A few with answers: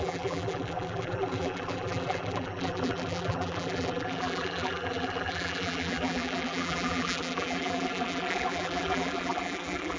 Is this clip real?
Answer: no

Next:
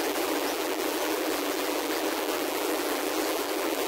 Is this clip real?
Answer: no